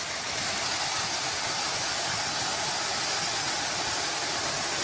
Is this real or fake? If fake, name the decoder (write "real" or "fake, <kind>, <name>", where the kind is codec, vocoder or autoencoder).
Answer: real